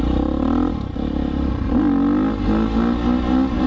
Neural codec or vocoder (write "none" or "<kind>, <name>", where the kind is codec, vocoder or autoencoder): none